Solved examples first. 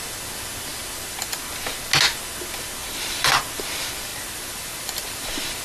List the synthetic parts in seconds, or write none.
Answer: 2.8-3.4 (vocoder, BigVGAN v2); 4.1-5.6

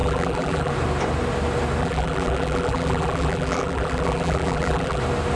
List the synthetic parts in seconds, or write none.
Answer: 0.0-0.7 (vocoder, BigVGAN v2); 1.8-5.0

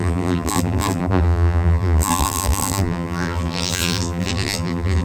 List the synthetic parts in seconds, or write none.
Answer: 0.0-5.0 (vocoder, BigVGAN v2)

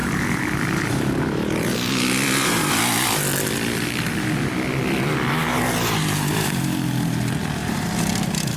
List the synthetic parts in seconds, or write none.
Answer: 0.0-1.2 (vocoder, BigVGAN v2); 7.6-8.1

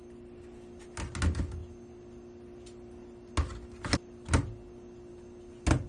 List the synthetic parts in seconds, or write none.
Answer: none